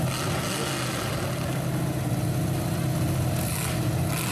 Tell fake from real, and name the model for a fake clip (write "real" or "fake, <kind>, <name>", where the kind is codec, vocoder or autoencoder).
real